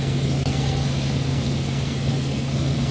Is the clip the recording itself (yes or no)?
no